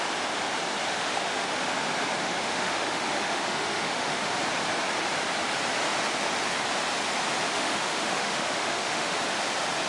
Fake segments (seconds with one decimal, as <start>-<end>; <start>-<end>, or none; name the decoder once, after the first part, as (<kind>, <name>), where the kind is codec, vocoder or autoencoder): 0.9-1.7 (autoencoder, DAC-VAE); 2.2-4.4; 7.5-9.2